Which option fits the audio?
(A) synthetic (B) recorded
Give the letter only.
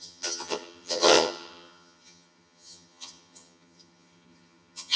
A